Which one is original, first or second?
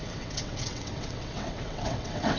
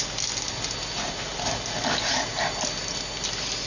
second